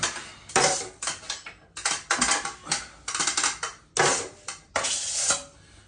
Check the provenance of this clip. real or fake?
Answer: real